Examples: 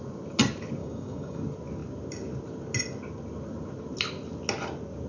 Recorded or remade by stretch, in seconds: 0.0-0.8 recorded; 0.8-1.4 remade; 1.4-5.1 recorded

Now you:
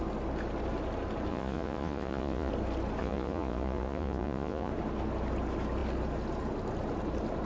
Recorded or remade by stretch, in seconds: 0.0-1.3 recorded; 1.3-2.5 remade; 2.5-3.0 recorded; 3.0-4.7 remade; 4.7-7.5 recorded

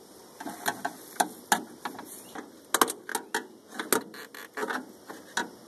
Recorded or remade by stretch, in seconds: 0.0-5.7 recorded